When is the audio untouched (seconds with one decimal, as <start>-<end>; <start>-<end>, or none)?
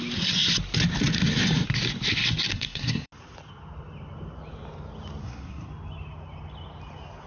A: 0.0-2.5; 3.1-5.2; 5.7-7.3